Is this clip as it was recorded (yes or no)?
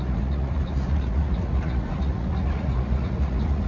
no